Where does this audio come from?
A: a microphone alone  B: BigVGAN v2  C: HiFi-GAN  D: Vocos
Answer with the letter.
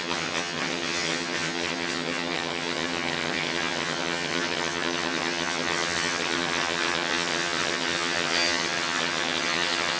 C